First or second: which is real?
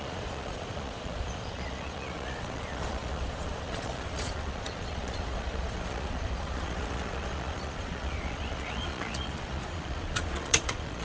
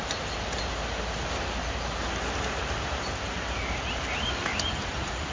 second